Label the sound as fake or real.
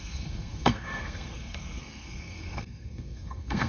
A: fake